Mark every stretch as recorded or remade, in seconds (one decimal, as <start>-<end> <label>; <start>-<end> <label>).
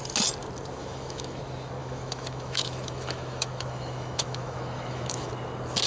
0.0-0.8 recorded; 0.8-1.4 remade; 1.4-1.8 recorded; 1.8-5.3 remade; 5.3-5.9 recorded